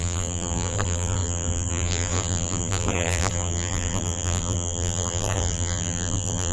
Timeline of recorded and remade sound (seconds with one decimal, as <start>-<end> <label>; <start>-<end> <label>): 0.0-6.5 remade